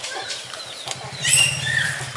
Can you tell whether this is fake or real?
fake